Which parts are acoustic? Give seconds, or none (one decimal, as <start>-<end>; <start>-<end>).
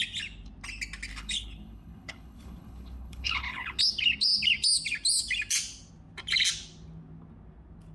0.0-1.1; 3.8-7.9